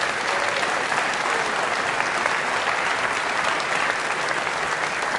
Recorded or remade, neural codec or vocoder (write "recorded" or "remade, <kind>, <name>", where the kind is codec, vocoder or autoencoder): recorded